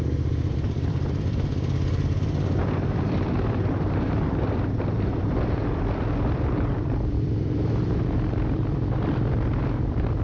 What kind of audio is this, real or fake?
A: fake